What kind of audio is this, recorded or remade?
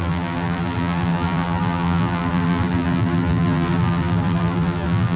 remade